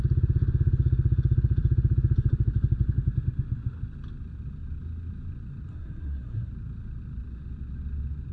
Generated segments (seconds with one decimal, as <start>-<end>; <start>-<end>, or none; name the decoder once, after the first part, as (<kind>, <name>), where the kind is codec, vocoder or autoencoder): 5.7-6.5 (codec, SNAC)